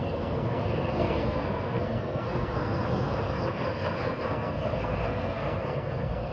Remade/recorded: remade